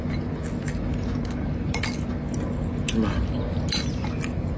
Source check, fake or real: real